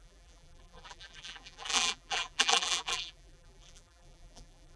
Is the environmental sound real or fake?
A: fake